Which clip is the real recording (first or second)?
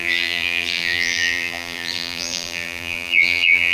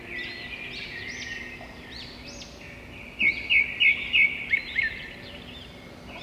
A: second